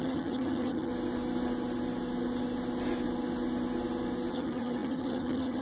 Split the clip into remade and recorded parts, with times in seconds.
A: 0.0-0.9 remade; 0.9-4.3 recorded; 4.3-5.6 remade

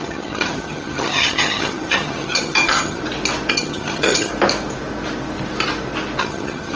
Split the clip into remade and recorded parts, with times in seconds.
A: 0.0-3.0 remade; 3.0-3.5 recorded; 3.5-4.3 remade; 4.3-6.2 recorded; 6.2-6.8 remade